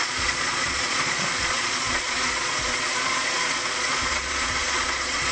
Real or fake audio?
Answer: fake